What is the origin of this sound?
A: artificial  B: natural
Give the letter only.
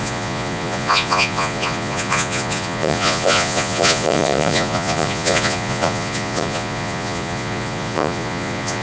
A